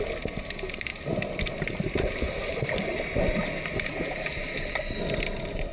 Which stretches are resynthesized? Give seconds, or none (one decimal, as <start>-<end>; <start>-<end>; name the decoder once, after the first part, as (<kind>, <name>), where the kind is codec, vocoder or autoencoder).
none